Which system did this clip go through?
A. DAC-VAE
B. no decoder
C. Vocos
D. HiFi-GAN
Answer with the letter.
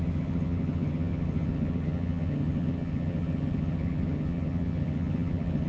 D